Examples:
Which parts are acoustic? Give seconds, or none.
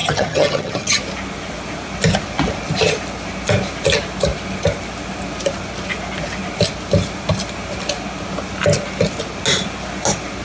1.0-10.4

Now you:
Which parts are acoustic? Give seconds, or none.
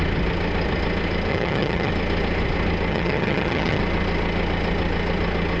0.0-1.3; 1.9-2.9; 3.8-5.6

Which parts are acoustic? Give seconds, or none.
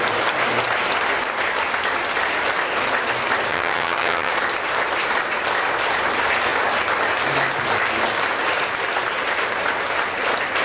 0.0-3.5; 4.3-10.6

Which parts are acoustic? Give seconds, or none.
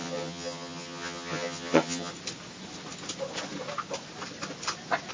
2.1-5.1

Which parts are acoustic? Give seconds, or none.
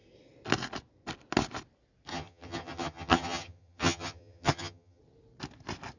0.0-2.1; 5.0-6.0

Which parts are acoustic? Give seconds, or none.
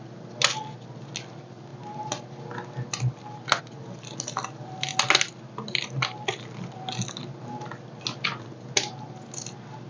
0.0-9.9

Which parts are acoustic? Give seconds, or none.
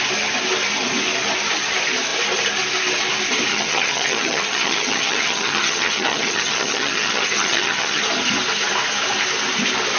0.0-3.5; 8.0-10.0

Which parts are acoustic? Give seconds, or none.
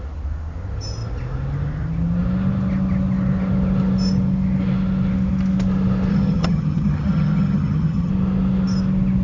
0.0-6.1; 8.1-9.2